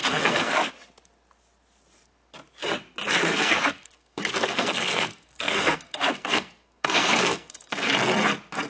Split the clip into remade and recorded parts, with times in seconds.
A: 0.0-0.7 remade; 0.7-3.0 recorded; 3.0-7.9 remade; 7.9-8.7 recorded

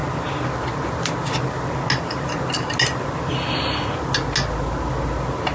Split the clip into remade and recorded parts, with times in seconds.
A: 0.0-5.5 recorded